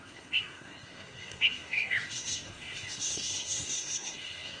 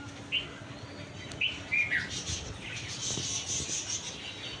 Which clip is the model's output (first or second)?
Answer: first